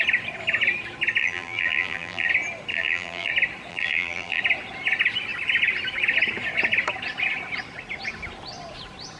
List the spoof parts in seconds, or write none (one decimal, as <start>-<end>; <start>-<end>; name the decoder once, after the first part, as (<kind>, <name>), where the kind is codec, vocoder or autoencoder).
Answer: 1.2-2.3 (vocoder, BigVGAN v2); 2.7-3.3; 3.7-4.4

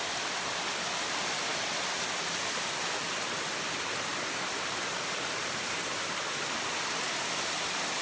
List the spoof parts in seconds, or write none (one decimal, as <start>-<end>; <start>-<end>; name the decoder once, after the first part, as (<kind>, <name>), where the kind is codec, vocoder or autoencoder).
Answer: 4.1-5.8 (vocoder, BigVGAN v2)

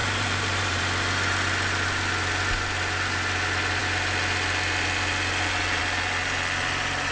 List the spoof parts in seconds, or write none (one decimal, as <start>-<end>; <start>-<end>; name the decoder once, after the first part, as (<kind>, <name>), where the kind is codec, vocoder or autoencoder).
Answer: 0.0-0.8 (vocoder, BigVGAN v2)

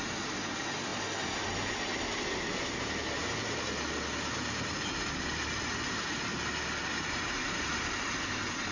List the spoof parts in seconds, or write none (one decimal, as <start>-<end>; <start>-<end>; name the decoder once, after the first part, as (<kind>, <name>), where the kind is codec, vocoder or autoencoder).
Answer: 7.4-8.7 (vocoder, BigVGAN v2)

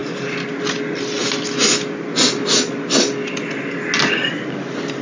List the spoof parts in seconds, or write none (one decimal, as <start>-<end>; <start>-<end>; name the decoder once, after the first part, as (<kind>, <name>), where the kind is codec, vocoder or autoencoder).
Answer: none

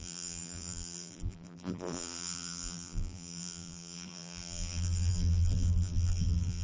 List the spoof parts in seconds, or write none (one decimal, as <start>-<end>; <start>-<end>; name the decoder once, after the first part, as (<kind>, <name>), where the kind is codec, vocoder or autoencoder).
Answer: 0.0-6.6 (vocoder, BigVGAN v2)

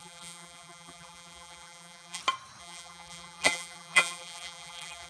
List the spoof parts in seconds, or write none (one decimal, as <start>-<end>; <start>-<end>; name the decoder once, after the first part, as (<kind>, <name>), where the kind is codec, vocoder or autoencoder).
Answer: 0.0-2.2 (vocoder, BigVGAN v2); 2.6-5.1

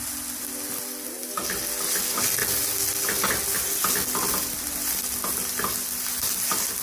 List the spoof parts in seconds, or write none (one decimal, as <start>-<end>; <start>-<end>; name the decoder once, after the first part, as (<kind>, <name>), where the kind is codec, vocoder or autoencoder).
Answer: none